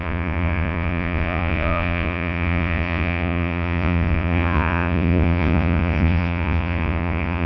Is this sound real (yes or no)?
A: no